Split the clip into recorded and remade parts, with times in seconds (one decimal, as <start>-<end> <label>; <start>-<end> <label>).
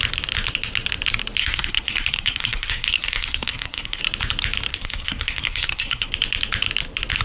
0.0-1.4 recorded; 1.4-4.0 remade; 4.0-4.7 recorded; 4.7-6.1 remade; 6.1-7.2 recorded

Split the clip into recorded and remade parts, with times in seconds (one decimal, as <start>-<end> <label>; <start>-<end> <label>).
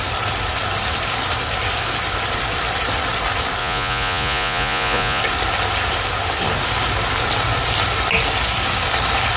0.0-3.6 recorded; 3.6-5.2 remade; 5.2-9.4 recorded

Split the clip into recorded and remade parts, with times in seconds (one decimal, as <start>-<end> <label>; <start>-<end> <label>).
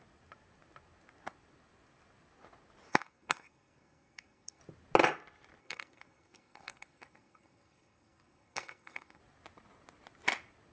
0.0-2.9 recorded; 2.9-4.6 remade; 4.6-5.6 recorded; 5.6-9.2 remade; 9.2-10.7 recorded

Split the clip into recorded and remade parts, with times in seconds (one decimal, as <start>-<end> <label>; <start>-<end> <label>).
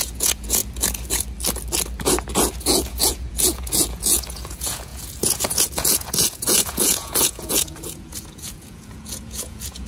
0.0-0.6 remade; 0.6-2.6 recorded; 2.6-9.9 remade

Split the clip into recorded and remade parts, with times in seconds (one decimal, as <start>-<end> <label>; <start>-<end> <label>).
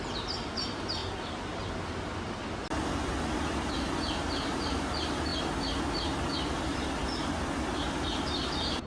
0.0-1.0 remade; 1.0-4.3 recorded; 4.3-5.3 remade; 5.3-6.6 recorded; 6.6-7.0 remade; 7.0-8.4 recorded; 8.4-8.9 remade